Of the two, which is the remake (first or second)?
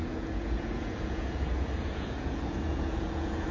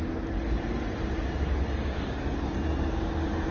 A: first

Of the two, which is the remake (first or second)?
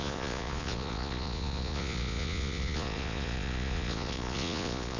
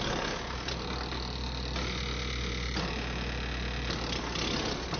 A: first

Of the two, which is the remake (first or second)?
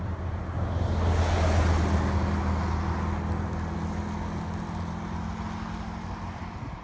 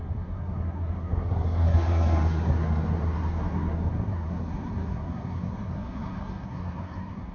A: second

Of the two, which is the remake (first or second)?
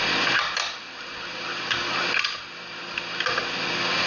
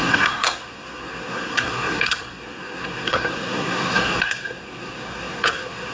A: second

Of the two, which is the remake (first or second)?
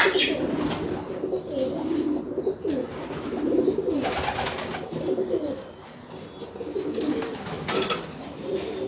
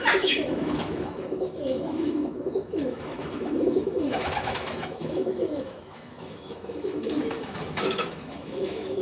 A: second